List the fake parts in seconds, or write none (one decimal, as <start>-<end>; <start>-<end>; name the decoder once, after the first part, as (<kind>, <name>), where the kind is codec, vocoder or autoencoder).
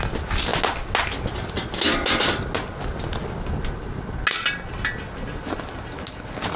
none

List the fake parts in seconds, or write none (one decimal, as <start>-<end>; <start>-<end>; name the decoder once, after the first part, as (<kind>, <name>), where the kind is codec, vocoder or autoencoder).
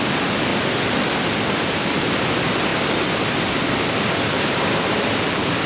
0.0-0.5 (vocoder, BigVGAN v2); 1.3-2.7; 3.7-5.7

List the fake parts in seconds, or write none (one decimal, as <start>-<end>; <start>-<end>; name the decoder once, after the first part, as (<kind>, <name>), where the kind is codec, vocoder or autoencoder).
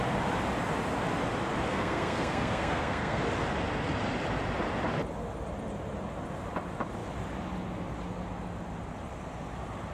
1.7-3.2 (codec, SNAC)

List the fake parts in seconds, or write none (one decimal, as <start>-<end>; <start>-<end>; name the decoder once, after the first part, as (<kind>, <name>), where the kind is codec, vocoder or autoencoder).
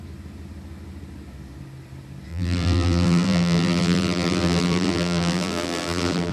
2.3-6.3 (vocoder, BigVGAN v2)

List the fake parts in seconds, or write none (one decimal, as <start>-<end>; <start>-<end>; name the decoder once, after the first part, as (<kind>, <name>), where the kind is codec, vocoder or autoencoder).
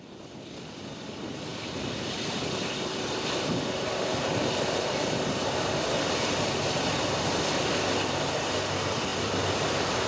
1.5-3.6 (vocoder, BigVGAN v2); 9.1-9.7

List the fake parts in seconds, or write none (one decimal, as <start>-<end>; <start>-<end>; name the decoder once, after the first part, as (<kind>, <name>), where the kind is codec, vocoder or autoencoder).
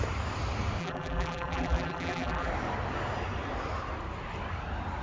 0.8-2.5 (vocoder, BigVGAN v2)